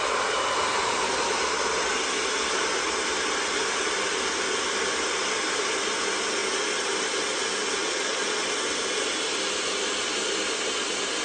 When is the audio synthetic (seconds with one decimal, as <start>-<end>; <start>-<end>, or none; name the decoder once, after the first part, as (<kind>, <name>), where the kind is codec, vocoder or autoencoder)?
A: 7.8-8.4 (vocoder, Vocos)